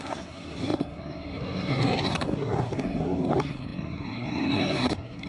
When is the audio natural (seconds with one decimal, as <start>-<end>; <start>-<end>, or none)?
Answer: none